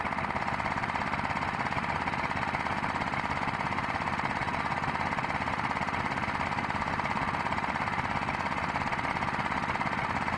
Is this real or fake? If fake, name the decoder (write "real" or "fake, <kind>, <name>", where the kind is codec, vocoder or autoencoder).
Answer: real